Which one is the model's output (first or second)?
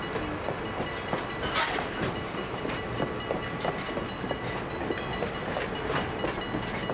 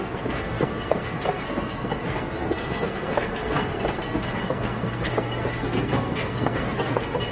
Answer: second